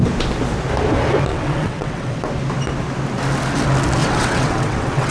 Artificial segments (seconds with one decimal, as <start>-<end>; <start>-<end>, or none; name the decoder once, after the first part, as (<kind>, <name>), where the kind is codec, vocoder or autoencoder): 1.3-2.2 (vocoder, WaveNeXt); 4.0-5.1